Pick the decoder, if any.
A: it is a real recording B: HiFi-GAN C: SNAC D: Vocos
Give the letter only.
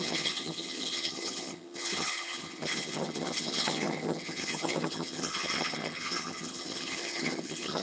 B